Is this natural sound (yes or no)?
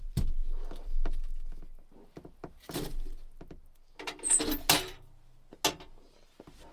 yes